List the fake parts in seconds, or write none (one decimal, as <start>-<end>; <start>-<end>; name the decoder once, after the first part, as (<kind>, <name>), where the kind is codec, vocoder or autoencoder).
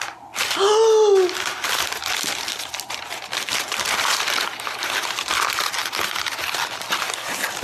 none